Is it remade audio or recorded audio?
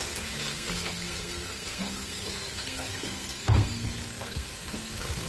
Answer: remade